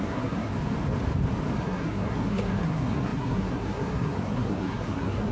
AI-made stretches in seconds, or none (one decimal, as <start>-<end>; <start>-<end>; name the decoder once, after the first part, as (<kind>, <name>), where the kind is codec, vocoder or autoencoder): 0.0-0.5 (codec, SNAC); 1.6-5.3